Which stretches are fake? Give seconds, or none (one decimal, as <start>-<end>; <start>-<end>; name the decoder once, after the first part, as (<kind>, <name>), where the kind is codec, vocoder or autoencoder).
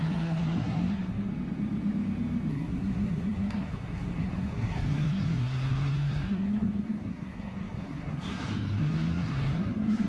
0.0-1.3 (codec, SNAC); 2.5-10.1